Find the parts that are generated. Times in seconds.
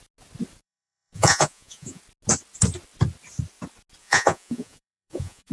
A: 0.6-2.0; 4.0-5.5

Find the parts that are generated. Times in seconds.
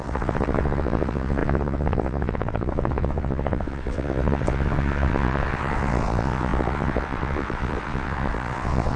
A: 0.0-9.0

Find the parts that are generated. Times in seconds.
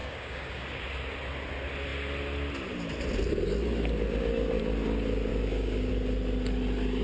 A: 0.0-0.8; 5.3-5.9